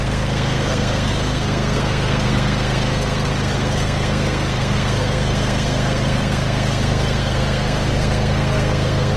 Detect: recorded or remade remade